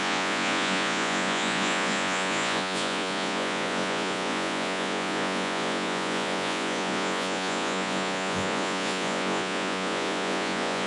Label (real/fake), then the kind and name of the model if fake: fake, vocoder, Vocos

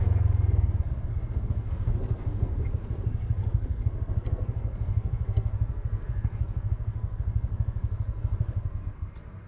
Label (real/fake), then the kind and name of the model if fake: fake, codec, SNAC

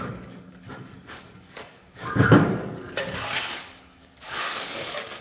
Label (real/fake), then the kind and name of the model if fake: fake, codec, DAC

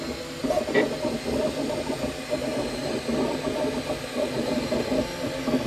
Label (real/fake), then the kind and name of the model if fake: real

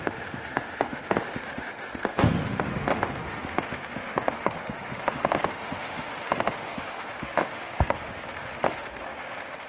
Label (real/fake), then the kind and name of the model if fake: fake, autoencoder, DAC-VAE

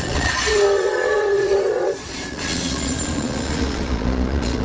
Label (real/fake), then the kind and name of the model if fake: fake, vocoder, Vocos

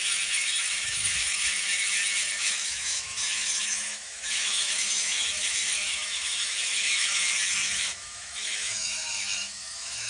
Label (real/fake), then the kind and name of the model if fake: fake, autoencoder, DAC-VAE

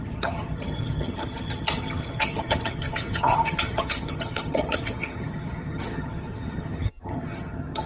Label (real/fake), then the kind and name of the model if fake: fake, vocoder, HiFi-GAN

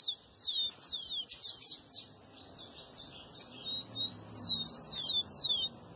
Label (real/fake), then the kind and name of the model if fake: real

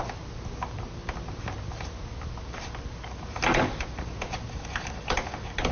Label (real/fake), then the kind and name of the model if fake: real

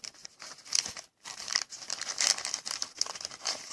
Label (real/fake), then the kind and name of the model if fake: real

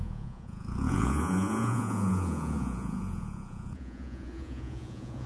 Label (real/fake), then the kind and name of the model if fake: fake, vocoder, Vocos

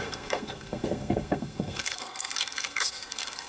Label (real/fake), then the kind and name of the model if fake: fake, codec, SNAC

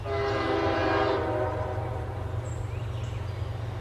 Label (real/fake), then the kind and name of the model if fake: real